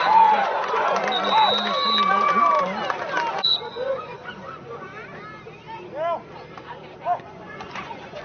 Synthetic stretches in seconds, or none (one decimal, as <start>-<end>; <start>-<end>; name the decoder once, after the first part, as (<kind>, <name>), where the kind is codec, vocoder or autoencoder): 0.0-1.0 (vocoder, Vocos); 3.3-4.9; 7.2-8.2